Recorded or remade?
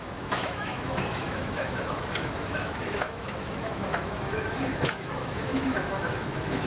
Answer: remade